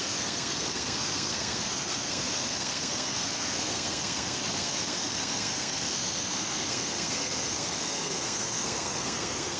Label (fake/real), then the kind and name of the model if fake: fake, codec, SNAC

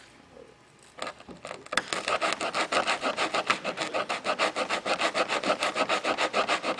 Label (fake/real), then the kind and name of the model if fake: real